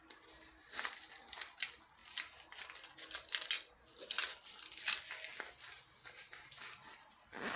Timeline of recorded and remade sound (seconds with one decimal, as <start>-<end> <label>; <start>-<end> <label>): 0.0-7.6 recorded